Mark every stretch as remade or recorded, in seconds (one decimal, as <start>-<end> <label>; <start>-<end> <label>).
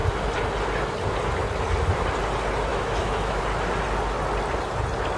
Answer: 0.0-2.7 recorded; 2.7-3.4 remade; 3.4-5.2 recorded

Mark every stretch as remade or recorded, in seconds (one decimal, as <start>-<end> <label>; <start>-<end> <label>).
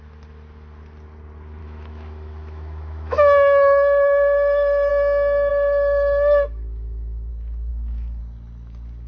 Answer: 0.0-1.6 recorded; 1.6-4.9 remade; 4.9-5.5 recorded; 5.5-7.3 remade; 7.3-7.7 recorded; 7.7-8.2 remade; 8.2-9.1 recorded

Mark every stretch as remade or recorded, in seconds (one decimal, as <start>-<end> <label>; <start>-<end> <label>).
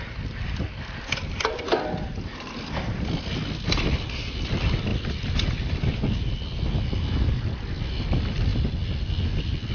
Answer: 0.0-9.7 recorded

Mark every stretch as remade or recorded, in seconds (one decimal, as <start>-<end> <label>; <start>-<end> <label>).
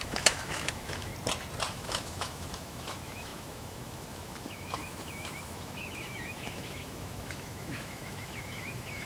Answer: 0.0-1.1 remade; 1.1-1.7 recorded; 1.7-9.1 remade